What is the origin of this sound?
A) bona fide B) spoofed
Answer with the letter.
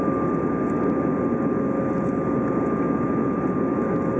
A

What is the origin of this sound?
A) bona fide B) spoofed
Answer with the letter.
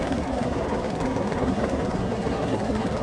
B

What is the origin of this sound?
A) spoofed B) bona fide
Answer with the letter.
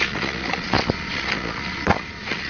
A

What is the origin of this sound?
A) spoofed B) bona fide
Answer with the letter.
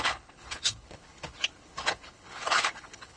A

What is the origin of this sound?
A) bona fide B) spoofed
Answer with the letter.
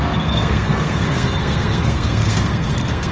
B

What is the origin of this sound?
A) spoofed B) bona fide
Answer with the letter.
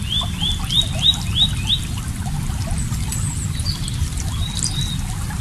B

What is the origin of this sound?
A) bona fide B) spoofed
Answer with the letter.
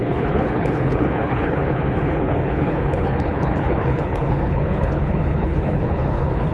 B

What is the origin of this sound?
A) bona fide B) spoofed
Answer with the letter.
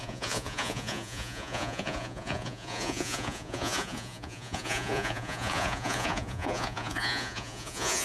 B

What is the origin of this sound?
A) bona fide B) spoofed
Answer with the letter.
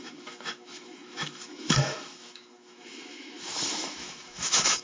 B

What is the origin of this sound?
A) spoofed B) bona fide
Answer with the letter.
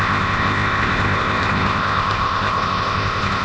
A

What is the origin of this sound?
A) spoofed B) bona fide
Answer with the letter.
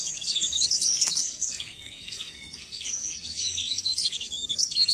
A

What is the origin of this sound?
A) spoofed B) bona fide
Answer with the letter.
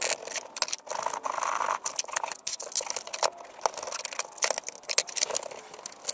B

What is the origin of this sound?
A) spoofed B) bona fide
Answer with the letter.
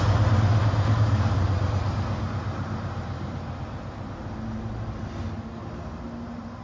B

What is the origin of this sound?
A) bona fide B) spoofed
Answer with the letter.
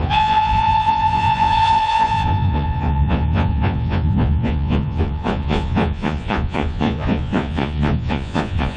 B